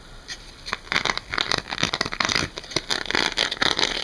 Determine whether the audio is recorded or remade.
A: recorded